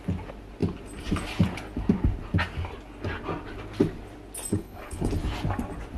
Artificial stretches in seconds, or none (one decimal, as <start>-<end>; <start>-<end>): 4.5-5.1